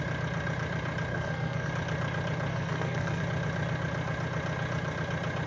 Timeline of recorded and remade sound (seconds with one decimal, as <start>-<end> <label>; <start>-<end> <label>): 0.0-1.1 recorded; 1.1-1.7 remade; 1.7-2.5 recorded; 2.5-3.2 remade; 3.2-5.5 recorded